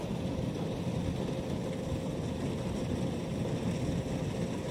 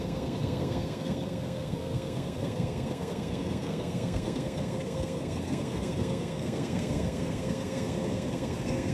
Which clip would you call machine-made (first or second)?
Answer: second